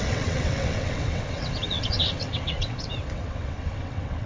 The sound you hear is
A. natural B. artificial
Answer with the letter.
B